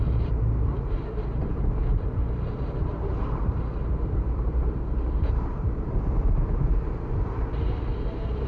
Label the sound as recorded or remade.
remade